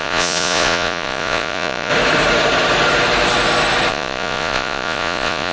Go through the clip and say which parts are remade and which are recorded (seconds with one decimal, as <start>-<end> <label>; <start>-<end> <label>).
0.0-1.9 remade; 1.9-3.9 recorded; 3.9-5.5 remade